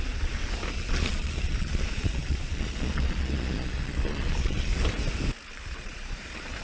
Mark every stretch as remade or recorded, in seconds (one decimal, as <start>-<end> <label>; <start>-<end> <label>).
0.0-0.4 remade; 0.4-0.9 recorded; 0.9-4.7 remade; 4.7-5.6 recorded; 5.6-6.6 remade